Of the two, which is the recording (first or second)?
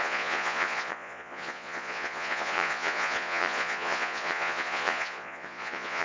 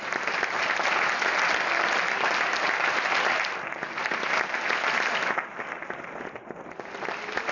second